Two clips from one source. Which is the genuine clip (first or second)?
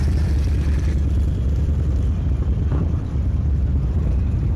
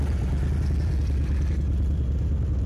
second